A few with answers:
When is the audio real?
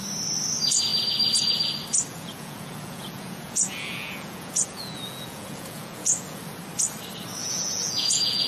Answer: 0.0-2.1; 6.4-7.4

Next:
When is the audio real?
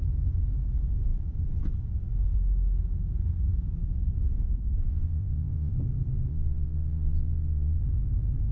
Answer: 0.0-4.9; 5.7-6.3; 7.8-8.5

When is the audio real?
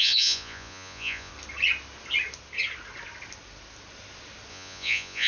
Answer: 1.3-4.5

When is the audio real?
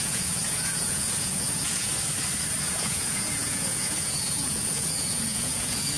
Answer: 1.9-2.6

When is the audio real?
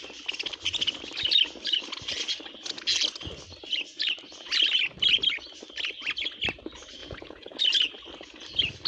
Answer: 0.0-7.0; 7.6-8.9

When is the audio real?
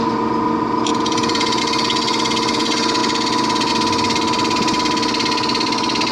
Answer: 0.0-0.9; 1.6-6.1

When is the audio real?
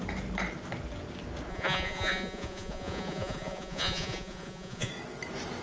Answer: 0.0-1.5; 4.9-5.6